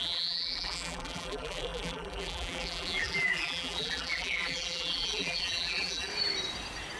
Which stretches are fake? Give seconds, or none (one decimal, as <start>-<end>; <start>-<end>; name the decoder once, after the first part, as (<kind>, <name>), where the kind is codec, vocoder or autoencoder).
0.0-6.1 (vocoder, BigVGAN v2)